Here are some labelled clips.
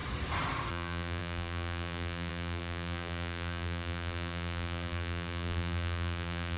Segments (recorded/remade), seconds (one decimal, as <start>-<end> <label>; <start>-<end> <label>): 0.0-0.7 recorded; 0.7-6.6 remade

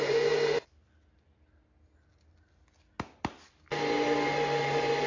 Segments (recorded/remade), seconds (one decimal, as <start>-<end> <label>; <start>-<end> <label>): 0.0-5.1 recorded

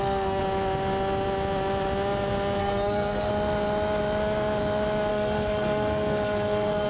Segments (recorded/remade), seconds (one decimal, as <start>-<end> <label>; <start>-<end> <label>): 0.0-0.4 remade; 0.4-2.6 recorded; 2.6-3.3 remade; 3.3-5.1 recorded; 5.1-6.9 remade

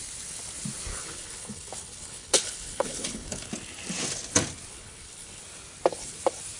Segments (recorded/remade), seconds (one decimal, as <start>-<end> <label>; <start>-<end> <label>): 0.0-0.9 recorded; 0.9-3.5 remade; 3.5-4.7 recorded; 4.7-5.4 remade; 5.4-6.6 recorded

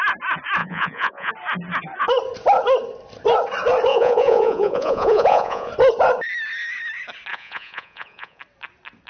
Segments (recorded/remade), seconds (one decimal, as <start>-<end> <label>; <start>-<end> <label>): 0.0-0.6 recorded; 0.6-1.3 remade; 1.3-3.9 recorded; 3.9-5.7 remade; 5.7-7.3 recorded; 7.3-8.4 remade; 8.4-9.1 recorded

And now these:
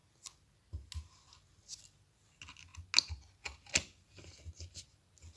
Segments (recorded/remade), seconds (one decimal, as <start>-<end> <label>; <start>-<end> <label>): 0.0-5.4 recorded

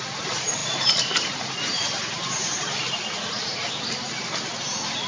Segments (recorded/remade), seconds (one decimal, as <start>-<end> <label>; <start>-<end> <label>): 0.0-5.1 remade